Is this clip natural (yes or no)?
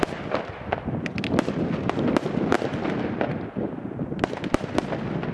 yes